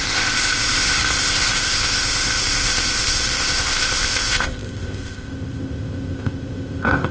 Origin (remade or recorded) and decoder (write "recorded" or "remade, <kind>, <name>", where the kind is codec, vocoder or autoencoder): remade, codec, ZipCodec